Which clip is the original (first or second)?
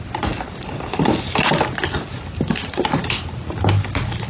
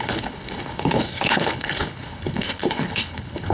first